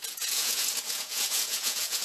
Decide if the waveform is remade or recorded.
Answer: remade